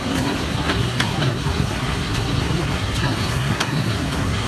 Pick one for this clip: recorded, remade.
remade